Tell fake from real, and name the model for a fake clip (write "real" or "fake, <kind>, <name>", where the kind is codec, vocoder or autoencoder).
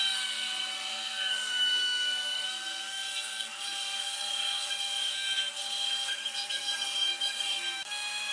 fake, codec, SNAC